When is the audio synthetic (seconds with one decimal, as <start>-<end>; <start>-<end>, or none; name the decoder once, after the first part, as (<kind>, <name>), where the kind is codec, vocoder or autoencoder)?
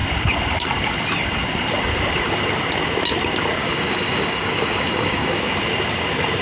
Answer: 3.6-5.4 (codec, DAC)